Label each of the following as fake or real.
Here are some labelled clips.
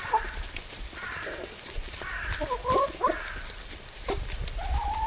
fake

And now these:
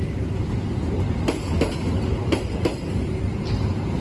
real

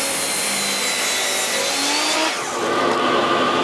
real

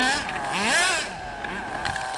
real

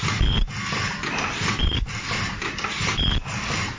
real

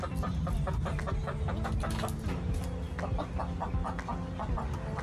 real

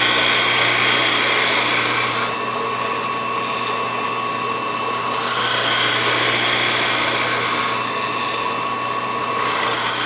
real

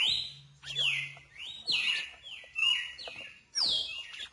real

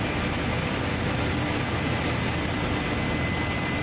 real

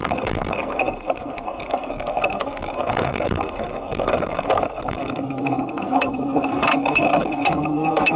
fake